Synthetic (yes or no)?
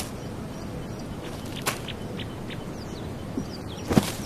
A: no